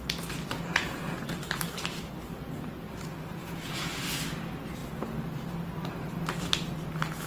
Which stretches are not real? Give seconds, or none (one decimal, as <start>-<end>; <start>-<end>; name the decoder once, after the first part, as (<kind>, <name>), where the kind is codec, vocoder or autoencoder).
0.7-1.3 (vocoder, Vocos); 3.4-4.0